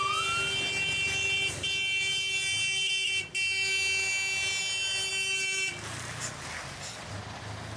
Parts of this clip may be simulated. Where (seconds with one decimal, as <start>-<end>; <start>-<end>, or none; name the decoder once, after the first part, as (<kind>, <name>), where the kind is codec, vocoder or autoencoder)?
none